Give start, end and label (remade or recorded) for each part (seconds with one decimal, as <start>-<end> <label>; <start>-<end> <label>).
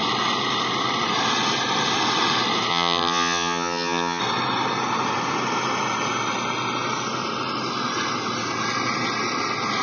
0.0-2.7 recorded; 2.7-4.2 remade; 4.2-9.8 recorded